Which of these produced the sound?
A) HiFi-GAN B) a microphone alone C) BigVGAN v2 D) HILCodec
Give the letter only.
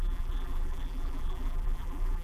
C